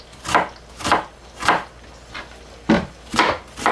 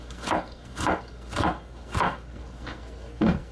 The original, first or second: first